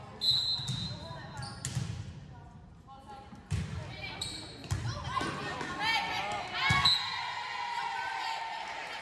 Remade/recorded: recorded